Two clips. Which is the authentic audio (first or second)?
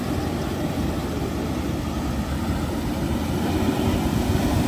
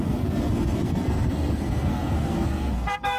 first